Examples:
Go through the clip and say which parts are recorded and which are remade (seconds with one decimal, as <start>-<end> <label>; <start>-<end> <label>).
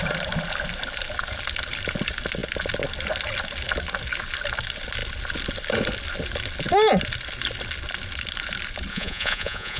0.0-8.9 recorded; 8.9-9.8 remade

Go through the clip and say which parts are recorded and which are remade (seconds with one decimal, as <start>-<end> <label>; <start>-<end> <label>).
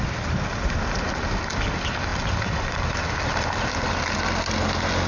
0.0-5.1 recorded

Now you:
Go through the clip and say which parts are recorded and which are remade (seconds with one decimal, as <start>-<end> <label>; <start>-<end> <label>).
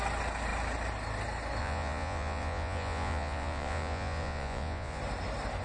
0.0-1.6 recorded; 1.6-5.0 remade; 5.0-5.6 recorded